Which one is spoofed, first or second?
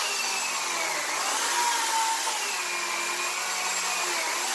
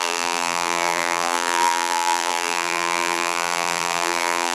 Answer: second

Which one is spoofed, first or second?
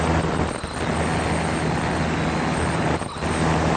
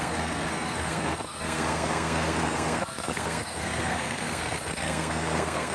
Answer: second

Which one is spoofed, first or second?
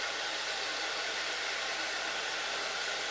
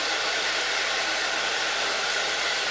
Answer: second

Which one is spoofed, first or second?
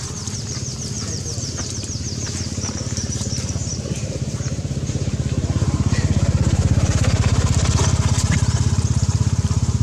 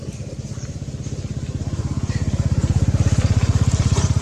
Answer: first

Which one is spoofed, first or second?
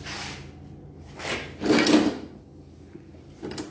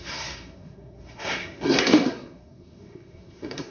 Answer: second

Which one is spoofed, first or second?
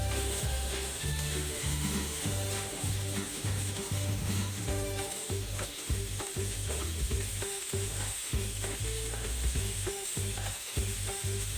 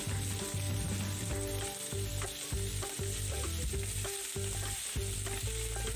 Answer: first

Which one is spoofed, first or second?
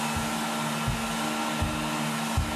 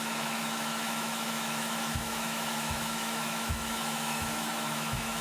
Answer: second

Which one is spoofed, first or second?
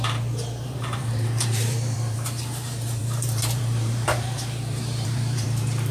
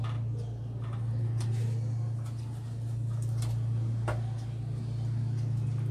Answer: first